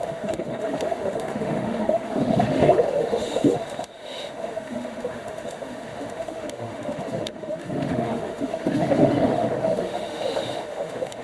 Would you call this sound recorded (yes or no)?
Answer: no